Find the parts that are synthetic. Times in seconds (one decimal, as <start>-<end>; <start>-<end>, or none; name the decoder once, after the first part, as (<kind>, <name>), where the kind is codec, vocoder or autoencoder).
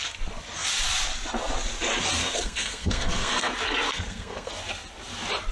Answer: 2.2-3.5 (codec, SNAC); 3.9-4.5